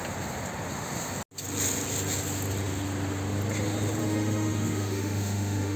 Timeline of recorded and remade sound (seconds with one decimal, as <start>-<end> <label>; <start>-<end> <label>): 0.0-4.0 recorded; 4.0-5.8 remade